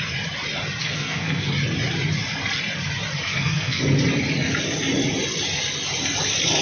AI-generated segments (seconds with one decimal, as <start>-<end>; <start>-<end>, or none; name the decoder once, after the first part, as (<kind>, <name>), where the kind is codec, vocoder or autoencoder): 0.8-1.5 (codec, SNAC); 3.3-3.8